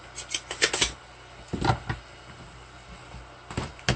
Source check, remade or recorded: recorded